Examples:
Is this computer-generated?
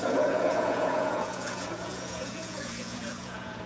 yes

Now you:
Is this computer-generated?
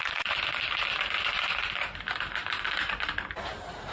yes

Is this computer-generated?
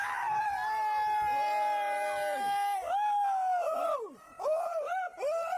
no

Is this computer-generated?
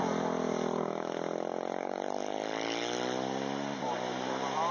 no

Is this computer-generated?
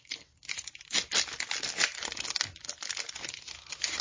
no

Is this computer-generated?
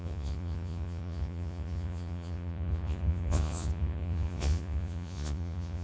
yes